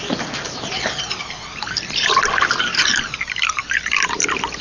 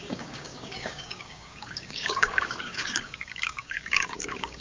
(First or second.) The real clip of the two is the first